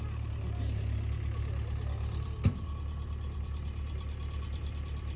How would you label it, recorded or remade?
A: recorded